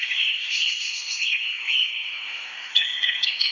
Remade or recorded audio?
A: remade